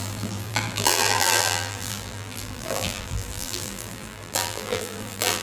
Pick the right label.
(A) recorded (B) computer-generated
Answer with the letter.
B